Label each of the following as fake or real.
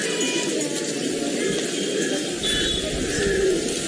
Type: real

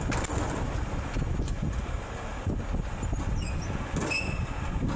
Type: real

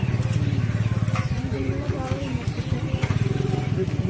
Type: real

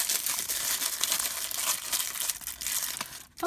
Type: real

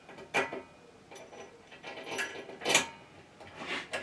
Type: real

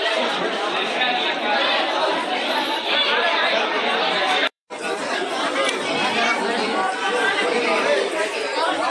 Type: fake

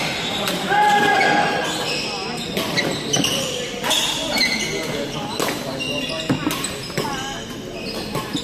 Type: real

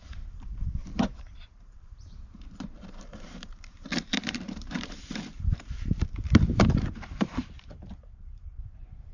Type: fake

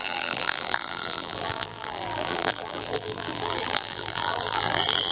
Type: fake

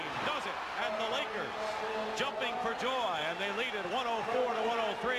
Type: real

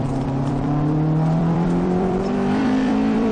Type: fake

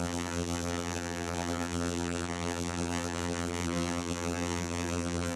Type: fake